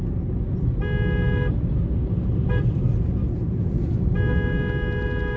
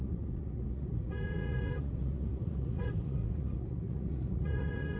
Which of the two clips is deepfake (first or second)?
second